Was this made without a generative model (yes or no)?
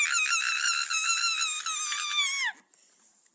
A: yes